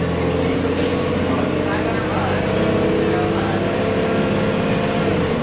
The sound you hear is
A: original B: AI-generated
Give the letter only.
A